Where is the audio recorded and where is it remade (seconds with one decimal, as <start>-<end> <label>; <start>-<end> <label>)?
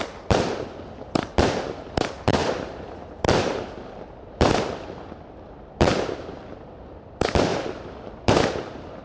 0.0-9.0 remade